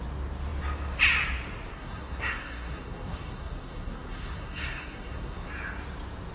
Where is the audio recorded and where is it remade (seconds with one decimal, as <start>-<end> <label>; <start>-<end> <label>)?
0.0-1.7 recorded; 1.7-5.5 remade; 5.5-6.3 recorded